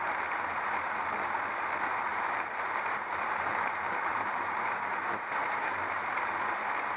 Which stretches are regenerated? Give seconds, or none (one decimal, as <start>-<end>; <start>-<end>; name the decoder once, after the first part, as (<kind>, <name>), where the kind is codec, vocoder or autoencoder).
2.1-6.3 (vocoder, BigVGAN v2)